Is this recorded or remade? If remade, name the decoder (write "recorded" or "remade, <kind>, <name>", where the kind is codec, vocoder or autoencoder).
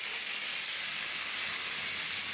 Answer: recorded